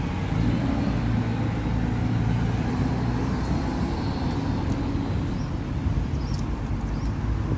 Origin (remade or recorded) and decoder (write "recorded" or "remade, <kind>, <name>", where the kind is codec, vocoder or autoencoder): recorded